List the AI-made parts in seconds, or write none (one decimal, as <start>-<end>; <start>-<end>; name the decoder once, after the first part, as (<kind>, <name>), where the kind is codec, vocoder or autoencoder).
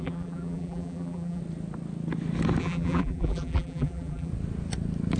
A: 0.0-1.4 (vocoder, BigVGAN v2); 2.6-4.3